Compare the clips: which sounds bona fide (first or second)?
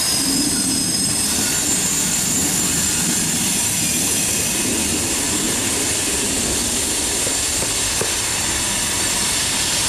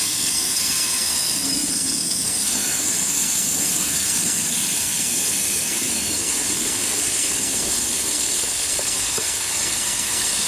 first